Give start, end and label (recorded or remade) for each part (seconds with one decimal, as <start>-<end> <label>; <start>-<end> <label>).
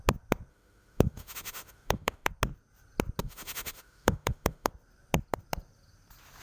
0.0-0.5 recorded; 0.5-2.3 remade; 2.3-3.2 recorded; 3.2-4.7 remade; 4.7-6.4 recorded